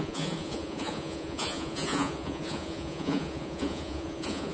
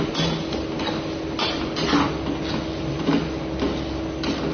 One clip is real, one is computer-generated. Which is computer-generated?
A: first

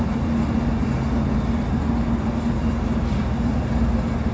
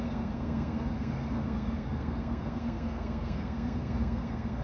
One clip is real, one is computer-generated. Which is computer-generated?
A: second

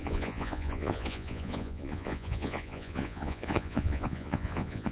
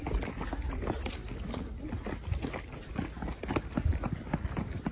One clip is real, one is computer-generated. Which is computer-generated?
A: first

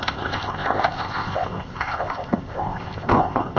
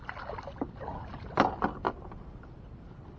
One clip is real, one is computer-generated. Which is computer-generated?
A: first